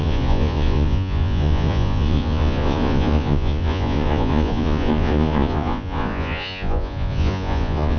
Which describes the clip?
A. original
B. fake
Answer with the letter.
B